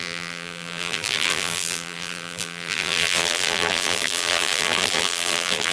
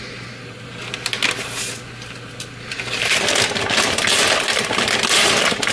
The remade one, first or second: first